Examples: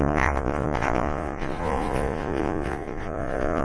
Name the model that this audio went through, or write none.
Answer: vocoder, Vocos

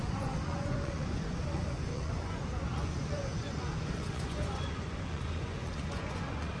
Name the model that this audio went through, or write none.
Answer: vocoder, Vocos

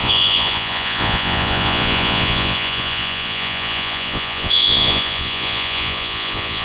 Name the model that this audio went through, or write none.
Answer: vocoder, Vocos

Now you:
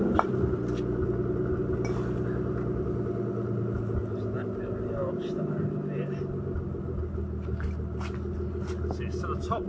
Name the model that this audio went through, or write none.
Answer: none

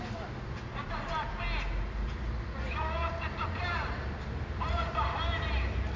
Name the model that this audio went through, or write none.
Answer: none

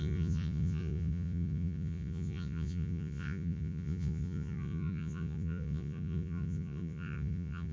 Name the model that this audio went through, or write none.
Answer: vocoder, Vocos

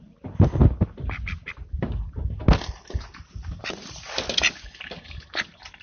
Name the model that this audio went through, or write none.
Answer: none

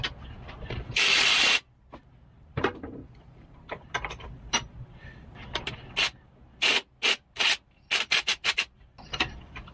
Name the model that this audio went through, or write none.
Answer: none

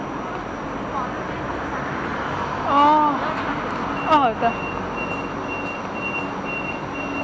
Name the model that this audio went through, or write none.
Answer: none